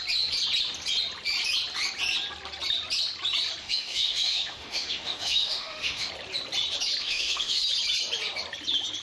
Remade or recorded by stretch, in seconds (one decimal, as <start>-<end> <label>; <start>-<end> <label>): 0.0-3.6 recorded; 3.6-6.1 remade; 6.1-7.0 recorded; 7.0-7.6 remade; 7.6-9.0 recorded